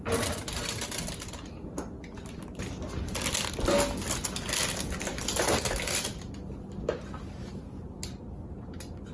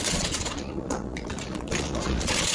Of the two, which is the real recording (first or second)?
first